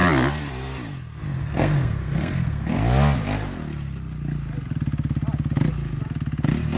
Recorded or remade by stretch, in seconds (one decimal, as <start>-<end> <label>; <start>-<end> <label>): 0.0-1.4 recorded; 1.4-2.8 remade; 2.8-6.8 recorded